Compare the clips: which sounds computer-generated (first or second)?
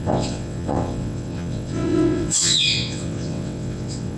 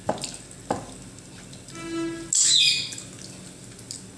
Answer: first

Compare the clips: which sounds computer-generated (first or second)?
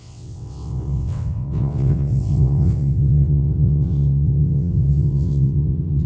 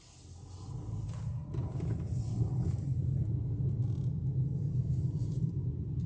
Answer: first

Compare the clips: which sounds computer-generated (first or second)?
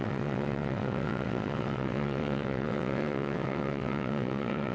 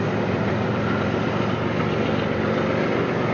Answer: first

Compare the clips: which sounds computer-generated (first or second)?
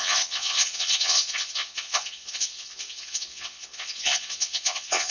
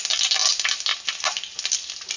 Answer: first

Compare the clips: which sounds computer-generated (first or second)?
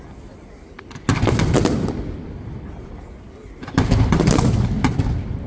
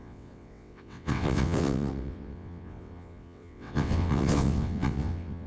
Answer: second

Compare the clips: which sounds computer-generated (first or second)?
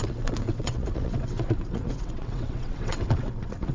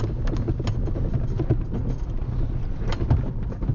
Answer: first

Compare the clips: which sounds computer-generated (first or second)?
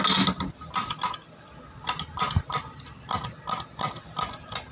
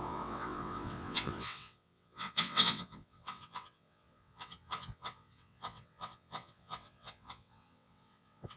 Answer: second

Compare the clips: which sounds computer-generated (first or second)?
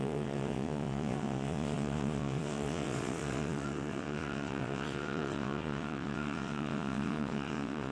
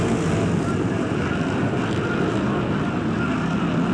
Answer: first